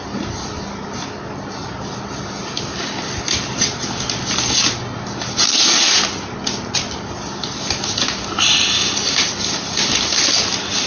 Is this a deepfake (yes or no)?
no